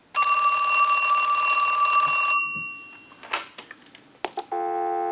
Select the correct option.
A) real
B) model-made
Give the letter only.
A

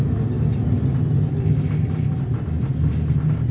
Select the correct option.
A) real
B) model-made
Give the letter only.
A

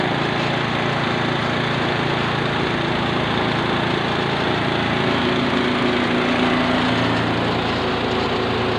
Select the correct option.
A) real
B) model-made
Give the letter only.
A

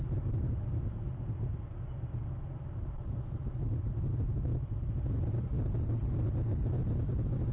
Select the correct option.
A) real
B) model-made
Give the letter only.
A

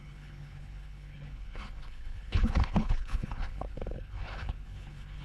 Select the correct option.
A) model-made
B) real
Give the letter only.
A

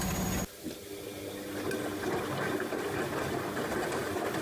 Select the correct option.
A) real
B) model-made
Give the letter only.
A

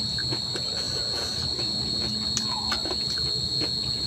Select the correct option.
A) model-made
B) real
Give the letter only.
B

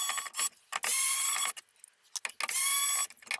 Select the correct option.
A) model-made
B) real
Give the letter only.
B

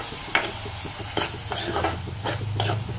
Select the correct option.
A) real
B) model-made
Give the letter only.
A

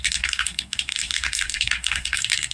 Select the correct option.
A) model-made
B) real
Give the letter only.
A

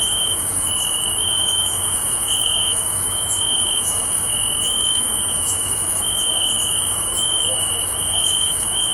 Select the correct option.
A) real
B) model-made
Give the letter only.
B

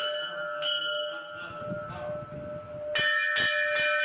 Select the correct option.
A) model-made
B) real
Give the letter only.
B